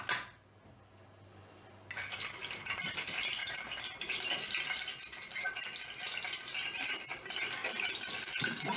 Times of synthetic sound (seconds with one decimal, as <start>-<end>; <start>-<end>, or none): none